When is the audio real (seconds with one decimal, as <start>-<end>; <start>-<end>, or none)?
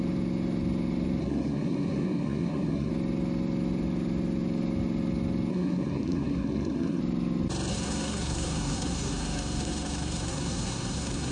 0.0-1.2; 2.9-5.5; 7.0-7.7